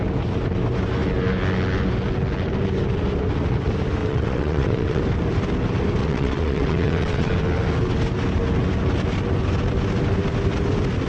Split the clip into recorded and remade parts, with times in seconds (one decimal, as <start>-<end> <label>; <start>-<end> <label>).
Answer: 0.0-4.0 recorded; 4.0-5.0 remade; 5.0-6.0 recorded; 6.0-7.3 remade; 7.3-11.1 recorded